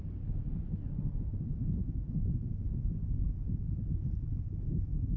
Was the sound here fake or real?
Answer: real